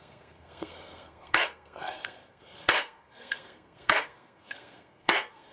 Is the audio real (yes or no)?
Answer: no